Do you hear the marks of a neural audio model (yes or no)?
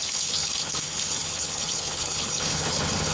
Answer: yes